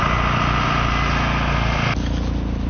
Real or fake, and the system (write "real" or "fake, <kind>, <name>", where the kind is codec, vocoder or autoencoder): real